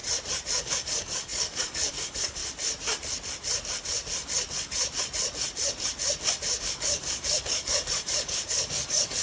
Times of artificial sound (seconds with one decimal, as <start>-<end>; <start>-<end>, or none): 0.6-2.4; 6.6-9.2